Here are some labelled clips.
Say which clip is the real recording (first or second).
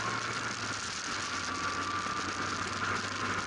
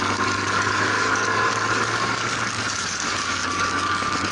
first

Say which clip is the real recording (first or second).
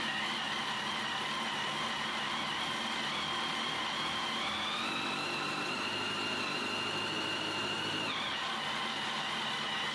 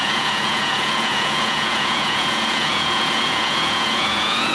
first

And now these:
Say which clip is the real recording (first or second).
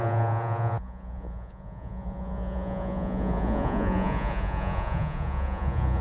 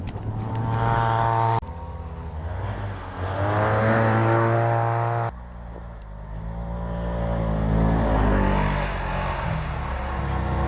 second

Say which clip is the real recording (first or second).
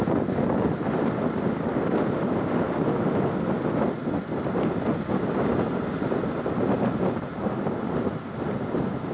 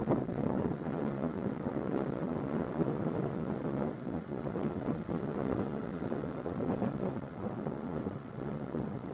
first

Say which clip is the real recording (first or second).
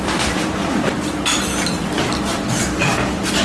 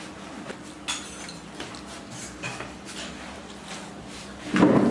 second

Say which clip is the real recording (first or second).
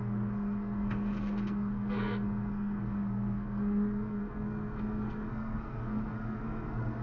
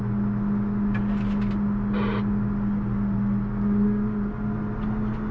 second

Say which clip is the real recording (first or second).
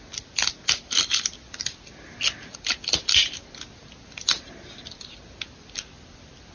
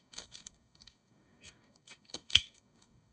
first